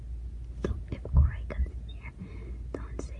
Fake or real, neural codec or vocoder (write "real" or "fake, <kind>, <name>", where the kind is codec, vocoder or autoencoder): real